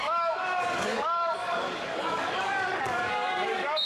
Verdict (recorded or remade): remade